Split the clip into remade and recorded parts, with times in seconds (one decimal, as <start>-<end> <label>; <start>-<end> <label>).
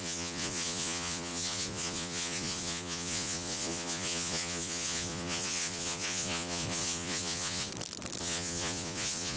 0.0-7.7 remade; 7.7-8.2 recorded; 8.2-9.4 remade